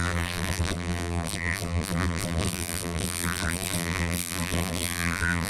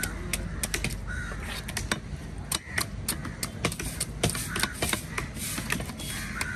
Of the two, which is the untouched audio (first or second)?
second